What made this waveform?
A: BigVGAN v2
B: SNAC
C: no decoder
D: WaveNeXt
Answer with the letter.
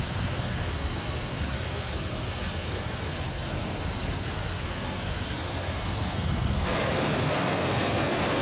B